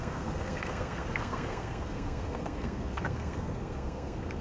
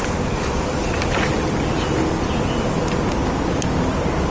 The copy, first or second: first